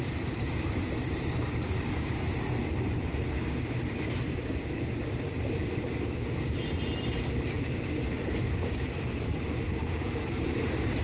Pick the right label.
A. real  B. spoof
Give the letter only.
B